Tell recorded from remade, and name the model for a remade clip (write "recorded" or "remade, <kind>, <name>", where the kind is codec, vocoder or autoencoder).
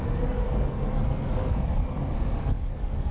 remade, codec, SNAC